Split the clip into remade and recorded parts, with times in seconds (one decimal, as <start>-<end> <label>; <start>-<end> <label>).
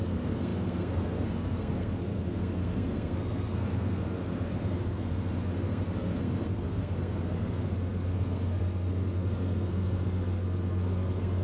0.0-11.4 remade